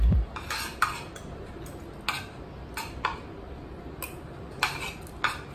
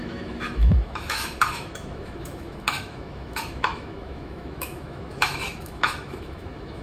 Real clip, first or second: first